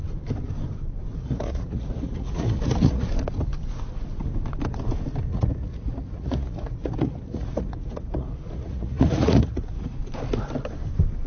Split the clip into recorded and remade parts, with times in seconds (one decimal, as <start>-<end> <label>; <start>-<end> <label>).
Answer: 0.0-1.1 recorded; 1.1-3.1 remade; 3.1-5.3 recorded; 5.3-10.0 remade; 10.0-11.3 recorded